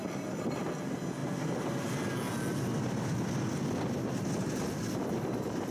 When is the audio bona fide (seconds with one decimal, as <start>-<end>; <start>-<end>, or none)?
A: 0.0-5.7